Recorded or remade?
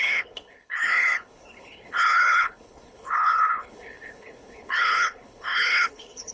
remade